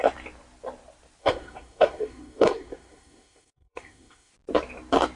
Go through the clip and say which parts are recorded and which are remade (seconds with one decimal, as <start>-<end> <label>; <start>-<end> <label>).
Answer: 0.0-1.2 recorded; 1.2-4.3 remade; 4.3-5.2 recorded